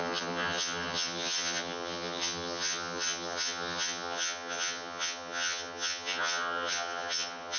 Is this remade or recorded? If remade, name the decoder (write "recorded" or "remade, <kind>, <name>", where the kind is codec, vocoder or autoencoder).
remade, vocoder, HiFi-GAN